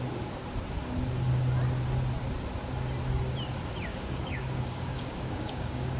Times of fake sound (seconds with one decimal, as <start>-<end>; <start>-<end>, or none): 3.9-6.0